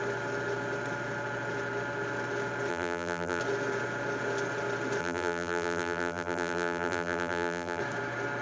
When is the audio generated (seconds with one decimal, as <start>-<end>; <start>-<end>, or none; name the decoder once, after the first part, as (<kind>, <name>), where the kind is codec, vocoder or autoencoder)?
2.7-3.4 (vocoder, BigVGAN v2); 5.0-7.8